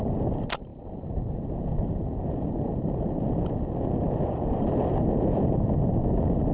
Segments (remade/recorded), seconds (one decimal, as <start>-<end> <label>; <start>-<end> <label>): 0.0-6.5 recorded